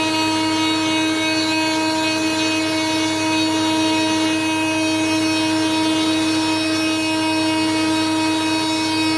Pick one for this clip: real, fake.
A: real